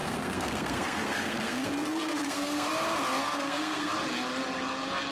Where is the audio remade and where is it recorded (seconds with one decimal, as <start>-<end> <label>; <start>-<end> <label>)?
0.0-2.7 remade; 2.7-3.2 recorded; 3.2-3.9 remade; 3.9-5.1 recorded